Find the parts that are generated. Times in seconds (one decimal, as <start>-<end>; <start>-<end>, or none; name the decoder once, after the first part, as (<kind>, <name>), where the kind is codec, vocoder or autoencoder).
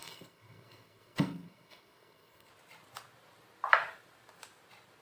0.0-2.5 (codec, SNAC)